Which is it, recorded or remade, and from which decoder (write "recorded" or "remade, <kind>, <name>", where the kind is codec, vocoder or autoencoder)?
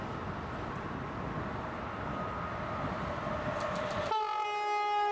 recorded